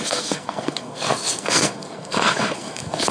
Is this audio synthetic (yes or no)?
yes